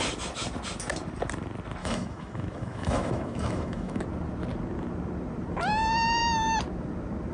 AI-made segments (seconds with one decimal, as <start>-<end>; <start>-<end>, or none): 1.8-4.0